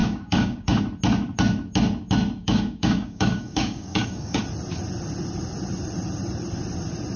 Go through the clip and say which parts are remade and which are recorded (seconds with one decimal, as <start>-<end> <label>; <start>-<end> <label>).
0.0-0.8 remade; 0.8-2.4 recorded; 2.4-4.4 remade; 4.4-7.2 recorded